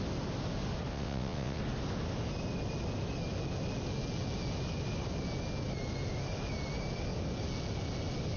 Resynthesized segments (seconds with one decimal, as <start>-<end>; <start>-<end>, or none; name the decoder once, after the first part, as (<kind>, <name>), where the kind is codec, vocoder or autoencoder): 0.9-1.6 (vocoder, WaveNeXt)